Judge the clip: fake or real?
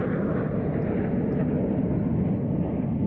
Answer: real